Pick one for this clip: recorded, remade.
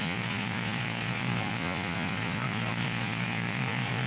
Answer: remade